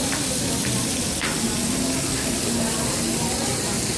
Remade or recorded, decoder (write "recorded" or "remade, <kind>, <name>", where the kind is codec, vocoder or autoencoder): recorded